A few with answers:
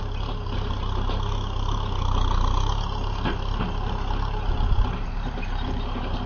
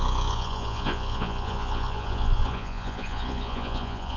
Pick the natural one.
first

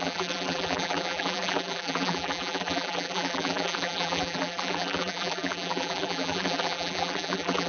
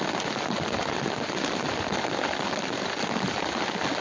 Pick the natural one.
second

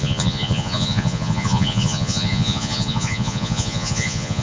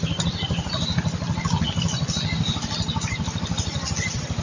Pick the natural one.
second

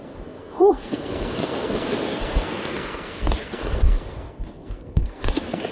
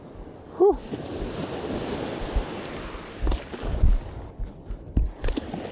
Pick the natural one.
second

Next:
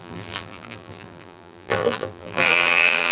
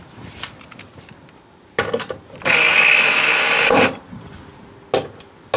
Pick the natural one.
second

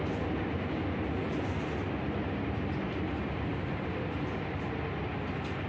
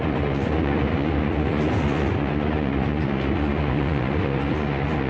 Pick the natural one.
first